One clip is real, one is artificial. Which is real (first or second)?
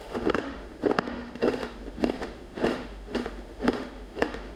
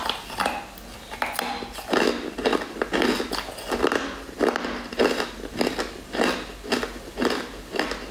second